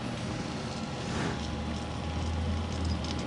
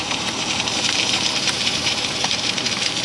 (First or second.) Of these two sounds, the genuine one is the first